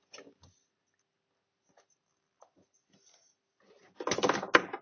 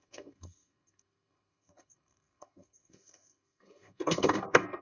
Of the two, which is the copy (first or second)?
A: second